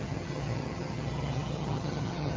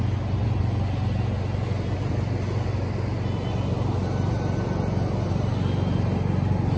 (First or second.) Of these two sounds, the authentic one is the second